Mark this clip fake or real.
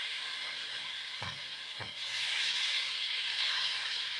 fake